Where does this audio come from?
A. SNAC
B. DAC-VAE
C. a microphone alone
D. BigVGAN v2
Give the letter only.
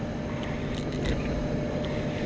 C